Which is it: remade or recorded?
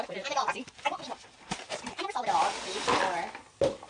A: recorded